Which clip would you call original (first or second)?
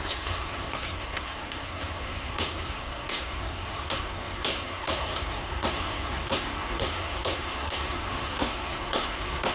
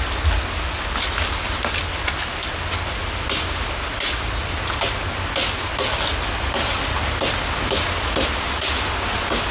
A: second